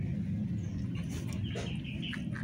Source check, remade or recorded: recorded